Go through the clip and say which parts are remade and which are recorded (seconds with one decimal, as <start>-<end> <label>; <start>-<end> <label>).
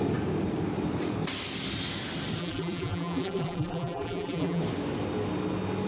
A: 0.0-2.4 recorded; 2.4-4.6 remade; 4.6-5.9 recorded